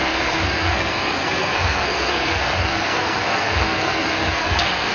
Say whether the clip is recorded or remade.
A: remade